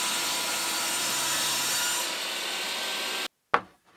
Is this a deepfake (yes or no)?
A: no